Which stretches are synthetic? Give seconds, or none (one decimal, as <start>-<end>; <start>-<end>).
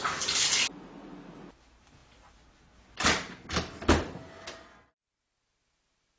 none